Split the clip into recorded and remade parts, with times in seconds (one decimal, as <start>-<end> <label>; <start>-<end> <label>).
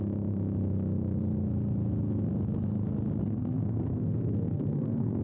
0.0-3.2 recorded; 3.2-5.2 remade